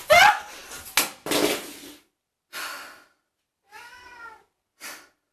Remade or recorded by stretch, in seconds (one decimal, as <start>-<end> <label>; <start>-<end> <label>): 0.0-5.3 recorded